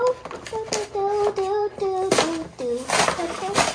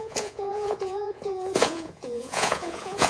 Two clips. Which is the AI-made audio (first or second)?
second